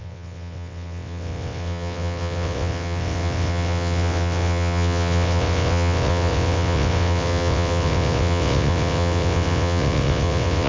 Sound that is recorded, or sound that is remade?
remade